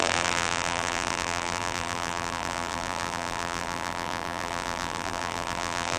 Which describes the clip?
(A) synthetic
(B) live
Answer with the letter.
A